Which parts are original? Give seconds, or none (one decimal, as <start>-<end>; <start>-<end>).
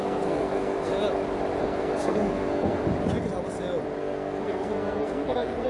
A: 0.9-1.6; 2.8-4.0